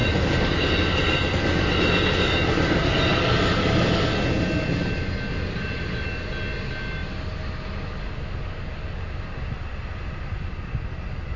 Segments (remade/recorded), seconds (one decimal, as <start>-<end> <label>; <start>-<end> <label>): 0.0-11.4 recorded